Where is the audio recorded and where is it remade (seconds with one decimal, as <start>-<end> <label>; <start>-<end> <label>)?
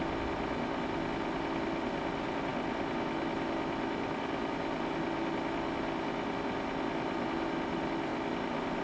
0.0-8.8 recorded